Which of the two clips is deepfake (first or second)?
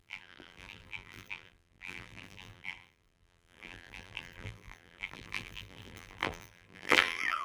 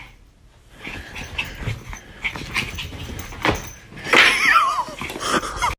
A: first